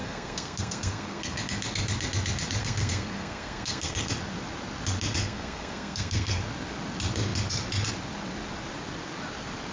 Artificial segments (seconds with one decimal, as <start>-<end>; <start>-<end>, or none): 0.0-1.4; 2.6-4.1; 5.2-6.4